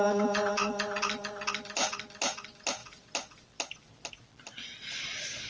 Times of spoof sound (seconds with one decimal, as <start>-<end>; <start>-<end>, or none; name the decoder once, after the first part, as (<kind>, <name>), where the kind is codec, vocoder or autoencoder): none